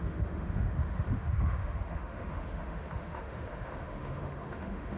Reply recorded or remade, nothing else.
remade